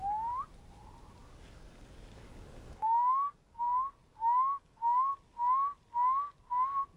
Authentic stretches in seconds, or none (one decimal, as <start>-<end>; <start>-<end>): 0.0-1.2; 3.6-4.1; 5.1-7.0